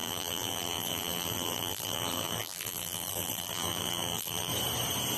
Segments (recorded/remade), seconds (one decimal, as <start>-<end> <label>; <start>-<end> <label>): 0.0-4.5 remade; 4.5-5.2 recorded

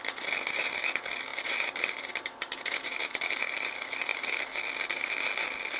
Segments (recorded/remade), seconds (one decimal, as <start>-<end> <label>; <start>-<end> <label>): 0.0-1.3 recorded; 1.3-3.4 remade; 3.4-4.1 recorded; 4.1-4.6 remade; 4.6-5.8 recorded

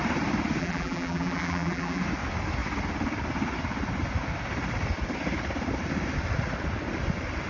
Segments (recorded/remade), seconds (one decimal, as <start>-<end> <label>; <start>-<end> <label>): 0.0-0.6 recorded; 0.6-2.0 remade; 2.0-7.5 recorded

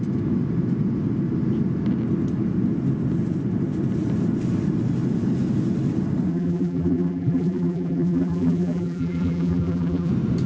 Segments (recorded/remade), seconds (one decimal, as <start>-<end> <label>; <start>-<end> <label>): 0.0-6.3 recorded; 6.3-10.1 remade; 10.1-10.5 recorded

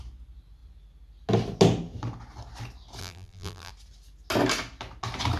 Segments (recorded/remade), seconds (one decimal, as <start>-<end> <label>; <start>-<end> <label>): 0.0-3.0 recorded; 3.0-3.7 remade; 3.7-5.4 recorded

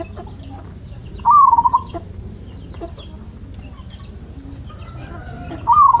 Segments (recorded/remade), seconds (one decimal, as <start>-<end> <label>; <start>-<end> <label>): 0.0-6.0 recorded